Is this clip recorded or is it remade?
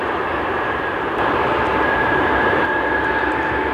remade